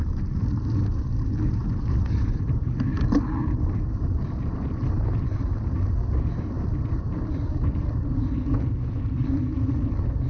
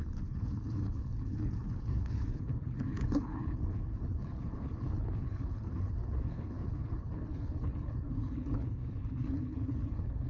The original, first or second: first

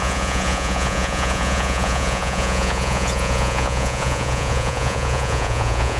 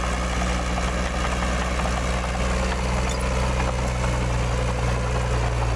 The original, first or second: second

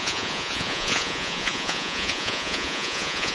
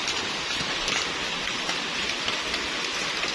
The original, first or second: second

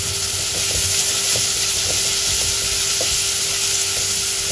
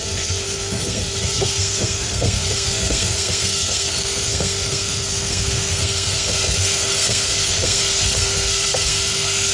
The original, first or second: first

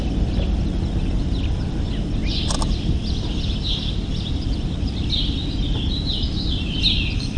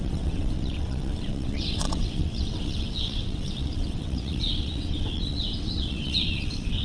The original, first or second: first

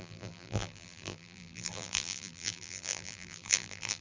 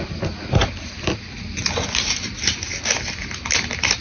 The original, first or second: second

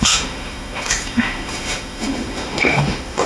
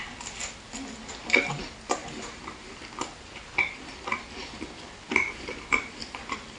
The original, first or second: second